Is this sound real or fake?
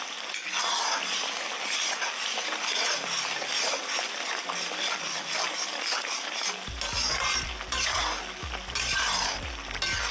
real